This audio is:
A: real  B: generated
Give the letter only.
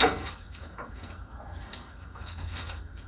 B